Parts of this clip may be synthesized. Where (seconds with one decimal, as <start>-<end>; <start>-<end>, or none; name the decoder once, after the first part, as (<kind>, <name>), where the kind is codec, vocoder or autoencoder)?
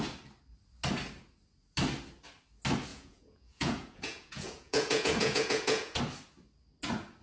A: 2.9-6.0 (vocoder, Vocos)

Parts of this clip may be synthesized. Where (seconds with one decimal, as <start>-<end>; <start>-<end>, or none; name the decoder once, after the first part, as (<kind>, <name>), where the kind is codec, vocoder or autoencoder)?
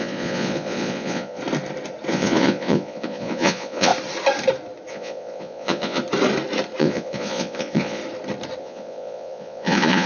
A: 0.0-1.4 (vocoder, Vocos); 2.1-3.9; 4.9-6.0; 6.8-8.0; 8.6-10.1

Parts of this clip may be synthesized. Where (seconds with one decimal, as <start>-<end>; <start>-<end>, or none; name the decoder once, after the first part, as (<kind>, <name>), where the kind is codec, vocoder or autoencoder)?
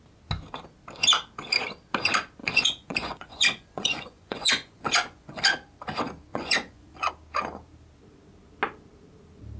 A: 2.4-5.4 (vocoder, Vocos); 6.3-7.1